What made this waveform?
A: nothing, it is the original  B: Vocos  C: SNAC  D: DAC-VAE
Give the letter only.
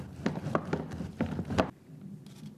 A